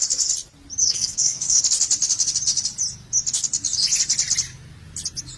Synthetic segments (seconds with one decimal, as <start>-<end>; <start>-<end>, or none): 0.8-1.6